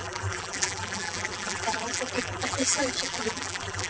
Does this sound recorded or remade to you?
remade